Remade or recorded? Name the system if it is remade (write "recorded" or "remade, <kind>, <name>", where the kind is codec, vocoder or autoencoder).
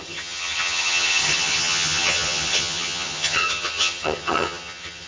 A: remade, vocoder, HiFi-GAN